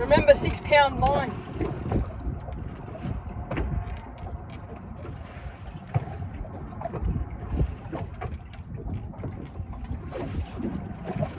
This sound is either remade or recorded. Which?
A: recorded